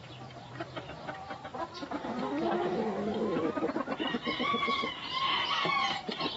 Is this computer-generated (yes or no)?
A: yes